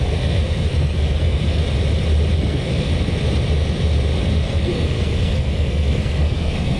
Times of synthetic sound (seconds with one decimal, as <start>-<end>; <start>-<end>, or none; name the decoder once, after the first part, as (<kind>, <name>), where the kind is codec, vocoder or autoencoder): 0.0-1.6 (codec, SNAC); 2.4-2.9; 4.2-6.8